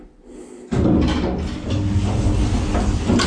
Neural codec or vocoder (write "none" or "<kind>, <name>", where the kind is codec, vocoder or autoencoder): none